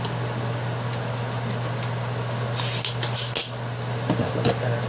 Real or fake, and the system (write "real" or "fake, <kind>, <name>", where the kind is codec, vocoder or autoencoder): real